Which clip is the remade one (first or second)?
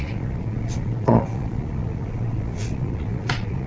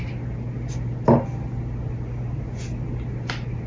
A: first